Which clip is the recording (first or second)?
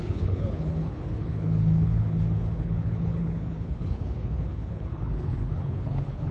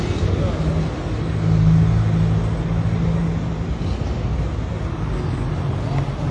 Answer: second